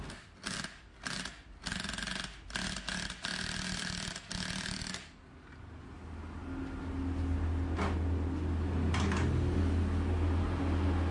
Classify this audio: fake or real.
real